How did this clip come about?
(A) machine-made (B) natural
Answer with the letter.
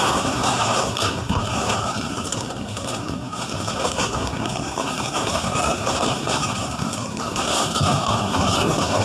A